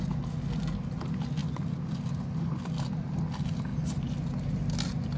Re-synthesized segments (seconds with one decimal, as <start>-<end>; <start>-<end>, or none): none

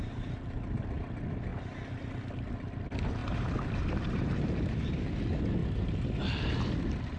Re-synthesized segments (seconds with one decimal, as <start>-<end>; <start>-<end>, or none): 3.2-4.7; 5.6-6.2

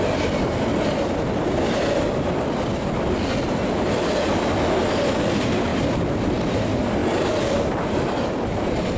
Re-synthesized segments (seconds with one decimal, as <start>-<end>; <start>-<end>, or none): none